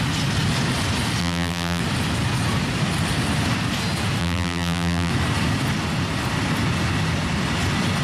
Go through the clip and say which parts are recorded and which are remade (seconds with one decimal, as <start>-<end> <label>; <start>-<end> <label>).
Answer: 0.0-1.2 recorded; 1.2-1.8 remade; 1.8-4.2 recorded; 4.2-5.1 remade; 5.1-8.0 recorded